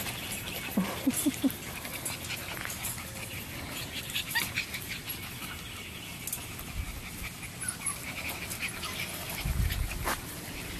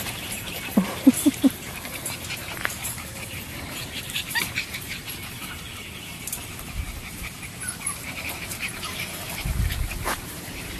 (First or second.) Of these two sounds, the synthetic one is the second